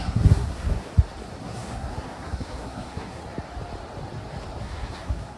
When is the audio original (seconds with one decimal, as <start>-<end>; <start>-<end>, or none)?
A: 0.9-1.4; 3.2-4.6